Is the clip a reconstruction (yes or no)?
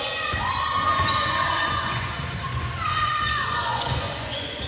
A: yes